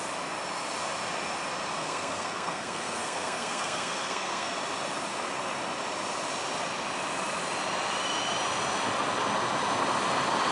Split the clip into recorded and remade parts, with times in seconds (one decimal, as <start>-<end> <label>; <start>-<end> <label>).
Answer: 0.0-1.8 recorded; 1.8-4.5 remade; 4.5-10.5 recorded